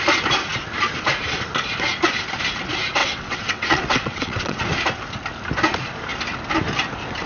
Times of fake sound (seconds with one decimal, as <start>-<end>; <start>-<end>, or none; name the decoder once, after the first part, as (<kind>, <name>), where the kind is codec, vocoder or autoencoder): 3.0-4.6 (vocoder, WaveNeXt)